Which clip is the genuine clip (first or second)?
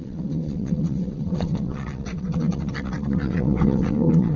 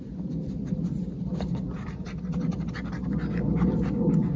second